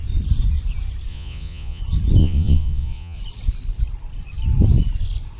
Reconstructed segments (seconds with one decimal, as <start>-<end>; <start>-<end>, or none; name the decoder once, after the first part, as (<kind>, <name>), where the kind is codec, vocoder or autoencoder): 1.1-1.8 (vocoder, Vocos); 2.2-3.2